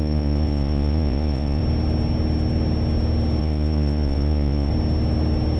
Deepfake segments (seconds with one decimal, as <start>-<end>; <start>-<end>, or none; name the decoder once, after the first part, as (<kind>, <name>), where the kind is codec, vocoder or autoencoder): 0.0-1.6 (vocoder, Vocos); 3.4-4.7

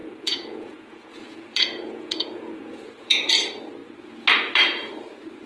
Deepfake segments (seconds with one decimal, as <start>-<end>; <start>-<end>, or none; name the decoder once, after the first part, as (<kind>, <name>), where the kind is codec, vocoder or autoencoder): 0.0-3.3 (vocoder, Vocos)

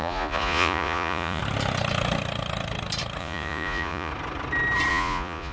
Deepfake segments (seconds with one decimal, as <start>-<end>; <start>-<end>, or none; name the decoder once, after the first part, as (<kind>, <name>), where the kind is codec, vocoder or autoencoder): 0.0-1.4 (vocoder, Vocos); 3.2-4.1; 4.9-5.5

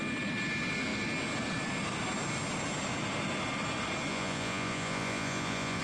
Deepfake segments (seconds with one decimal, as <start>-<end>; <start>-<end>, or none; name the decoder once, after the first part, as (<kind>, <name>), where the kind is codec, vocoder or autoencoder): 4.1-5.8 (vocoder, Vocos)

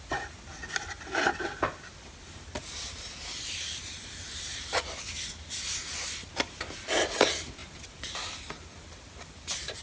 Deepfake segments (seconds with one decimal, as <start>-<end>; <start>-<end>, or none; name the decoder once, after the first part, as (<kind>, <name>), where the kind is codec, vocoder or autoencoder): none